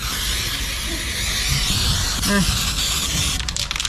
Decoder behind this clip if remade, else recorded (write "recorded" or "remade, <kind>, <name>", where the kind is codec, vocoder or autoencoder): recorded